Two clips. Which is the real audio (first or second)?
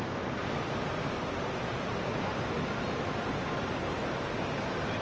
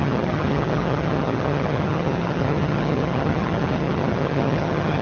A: first